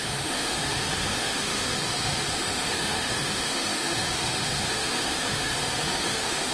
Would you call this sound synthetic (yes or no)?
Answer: yes